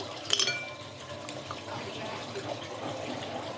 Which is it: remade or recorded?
recorded